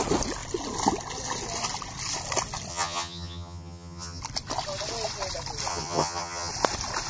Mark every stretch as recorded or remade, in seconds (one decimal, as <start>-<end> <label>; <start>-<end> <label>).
0.0-2.7 recorded; 2.7-4.2 remade; 4.2-5.7 recorded; 5.7-6.5 remade; 6.5-7.1 recorded